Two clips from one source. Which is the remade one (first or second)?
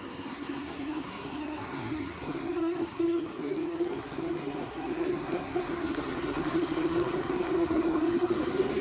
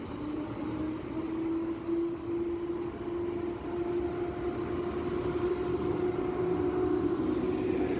first